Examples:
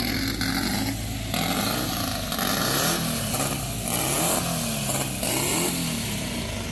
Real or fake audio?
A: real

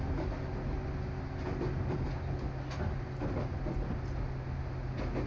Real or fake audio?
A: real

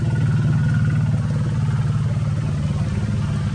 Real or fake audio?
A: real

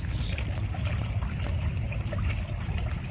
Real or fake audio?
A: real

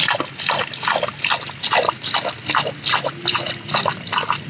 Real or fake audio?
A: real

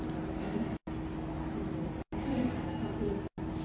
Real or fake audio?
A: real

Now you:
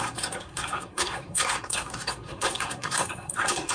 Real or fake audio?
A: fake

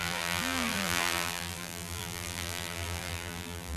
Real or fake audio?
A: fake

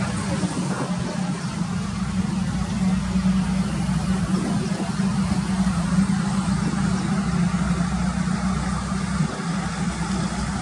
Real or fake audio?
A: real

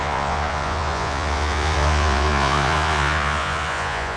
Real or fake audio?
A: fake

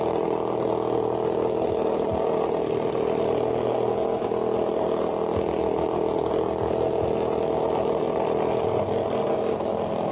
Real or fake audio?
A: real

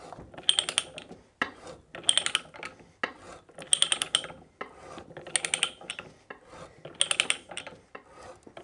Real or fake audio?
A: real